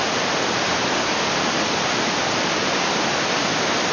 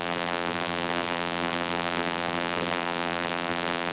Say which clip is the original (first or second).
first